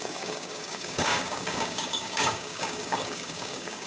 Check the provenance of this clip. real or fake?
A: fake